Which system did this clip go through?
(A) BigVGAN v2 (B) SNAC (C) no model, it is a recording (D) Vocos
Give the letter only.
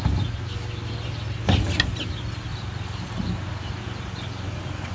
C